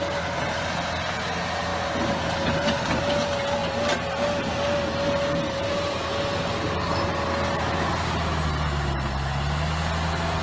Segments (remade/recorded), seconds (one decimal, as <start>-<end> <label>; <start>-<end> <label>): 0.0-10.4 recorded